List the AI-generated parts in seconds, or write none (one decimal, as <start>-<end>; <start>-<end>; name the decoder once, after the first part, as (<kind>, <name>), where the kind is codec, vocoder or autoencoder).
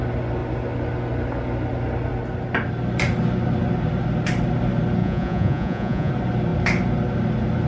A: 5.0-6.1 (vocoder, Vocos)